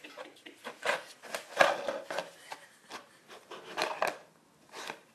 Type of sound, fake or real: real